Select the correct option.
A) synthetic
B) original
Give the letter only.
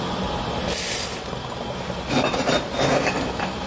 B